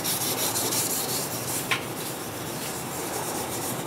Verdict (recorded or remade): remade